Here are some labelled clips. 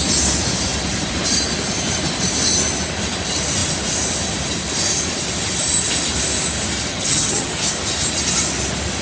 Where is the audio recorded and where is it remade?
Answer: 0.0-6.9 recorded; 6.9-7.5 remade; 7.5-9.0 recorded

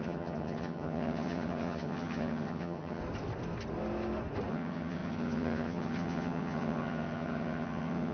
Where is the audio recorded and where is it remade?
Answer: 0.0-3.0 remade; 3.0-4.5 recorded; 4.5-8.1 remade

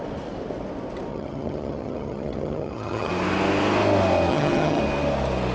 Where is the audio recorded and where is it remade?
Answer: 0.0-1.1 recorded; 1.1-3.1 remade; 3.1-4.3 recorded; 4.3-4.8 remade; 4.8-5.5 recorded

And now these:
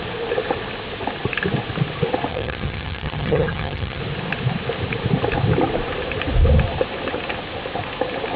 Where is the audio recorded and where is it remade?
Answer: 0.0-2.3 recorded; 2.3-4.0 remade; 4.0-8.4 recorded

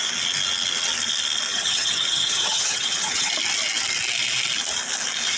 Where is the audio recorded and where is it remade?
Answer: 0.0-1.5 recorded; 1.5-3.3 remade; 3.3-5.4 recorded